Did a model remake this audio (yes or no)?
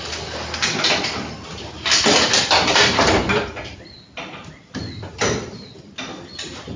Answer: yes